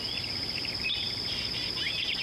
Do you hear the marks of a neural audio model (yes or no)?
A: no